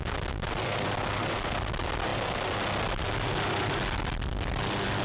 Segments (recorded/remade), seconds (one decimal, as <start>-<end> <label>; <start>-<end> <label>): 0.0-5.0 recorded